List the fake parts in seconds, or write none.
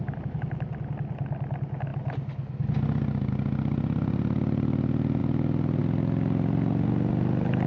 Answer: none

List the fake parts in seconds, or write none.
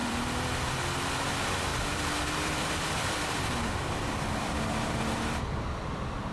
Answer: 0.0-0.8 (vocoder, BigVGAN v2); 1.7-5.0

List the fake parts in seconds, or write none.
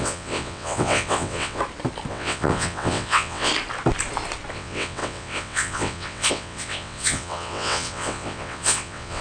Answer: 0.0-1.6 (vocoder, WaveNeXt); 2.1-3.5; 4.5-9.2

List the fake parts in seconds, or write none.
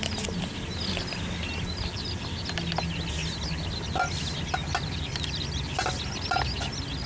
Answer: 4.6-6.0 (vocoder, BigVGAN v2)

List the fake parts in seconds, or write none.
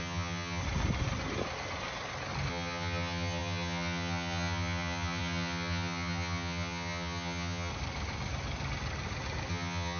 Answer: 0.0-0.6 (vocoder, HiFi-GAN); 2.5-7.7; 9.5-10.0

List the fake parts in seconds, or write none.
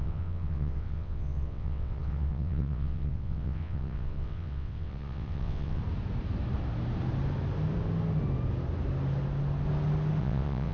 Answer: 0.0-5.8 (vocoder, WaveNeXt); 10.2-10.7